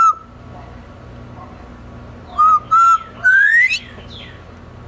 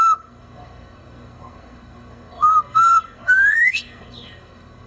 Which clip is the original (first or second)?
first